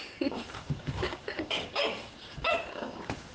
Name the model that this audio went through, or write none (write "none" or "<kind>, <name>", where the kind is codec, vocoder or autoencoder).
codec, DAC